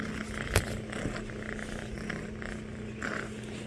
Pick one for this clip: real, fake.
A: real